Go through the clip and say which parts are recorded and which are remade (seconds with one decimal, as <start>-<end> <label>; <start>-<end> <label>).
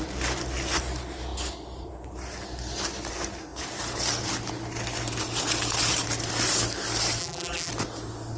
0.0-7.2 recorded; 7.2-7.7 remade; 7.7-8.4 recorded